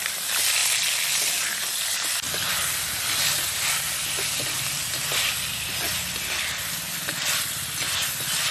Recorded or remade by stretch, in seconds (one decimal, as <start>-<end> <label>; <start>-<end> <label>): 0.0-8.5 recorded